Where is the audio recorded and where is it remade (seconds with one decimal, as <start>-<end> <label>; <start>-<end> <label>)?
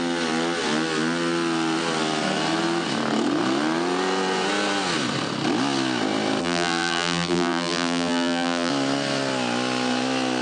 0.0-6.4 recorded; 6.4-8.7 remade; 8.7-10.4 recorded